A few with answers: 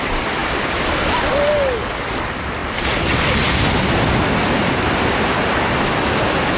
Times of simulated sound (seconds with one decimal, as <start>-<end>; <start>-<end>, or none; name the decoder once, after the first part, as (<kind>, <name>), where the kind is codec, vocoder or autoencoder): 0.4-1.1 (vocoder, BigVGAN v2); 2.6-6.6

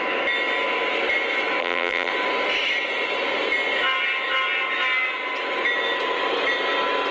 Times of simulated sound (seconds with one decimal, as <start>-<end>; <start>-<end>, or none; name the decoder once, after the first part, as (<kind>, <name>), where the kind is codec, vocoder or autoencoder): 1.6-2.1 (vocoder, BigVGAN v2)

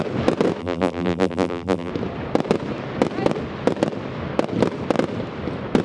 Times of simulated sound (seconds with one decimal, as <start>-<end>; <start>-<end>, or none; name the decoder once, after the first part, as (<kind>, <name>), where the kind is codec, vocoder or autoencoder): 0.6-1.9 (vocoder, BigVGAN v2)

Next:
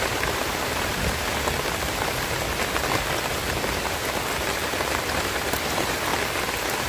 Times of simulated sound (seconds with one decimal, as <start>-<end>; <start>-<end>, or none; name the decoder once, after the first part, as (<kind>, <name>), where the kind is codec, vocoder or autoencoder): 0.0-0.9 (vocoder, BigVGAN v2); 5.0-6.1

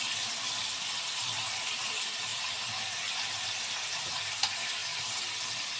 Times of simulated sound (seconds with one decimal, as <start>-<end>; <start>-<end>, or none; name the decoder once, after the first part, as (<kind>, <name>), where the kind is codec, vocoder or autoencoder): 0.0-2.3 (vocoder, BigVGAN v2); 3.1-5.8

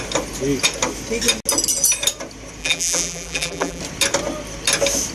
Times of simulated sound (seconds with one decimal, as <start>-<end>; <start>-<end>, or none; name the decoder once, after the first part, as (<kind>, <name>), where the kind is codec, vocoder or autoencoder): 2.6-3.8 (vocoder, BigVGAN v2)